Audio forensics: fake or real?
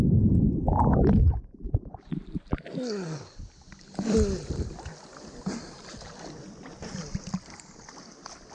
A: real